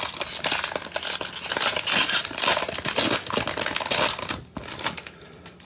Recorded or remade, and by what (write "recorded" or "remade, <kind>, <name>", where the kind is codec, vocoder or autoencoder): recorded